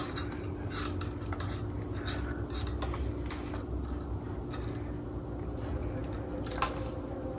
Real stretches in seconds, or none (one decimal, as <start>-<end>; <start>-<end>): 0.0-7.4